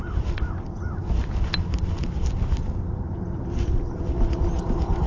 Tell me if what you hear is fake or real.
real